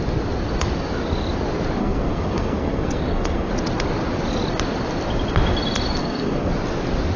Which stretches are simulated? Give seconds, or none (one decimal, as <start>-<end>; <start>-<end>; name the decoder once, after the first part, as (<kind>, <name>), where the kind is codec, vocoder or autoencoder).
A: 1.8-3.5 (codec, SNAC); 6.0-6.5